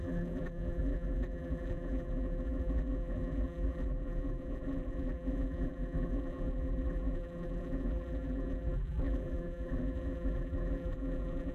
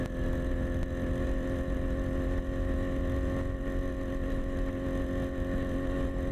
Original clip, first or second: second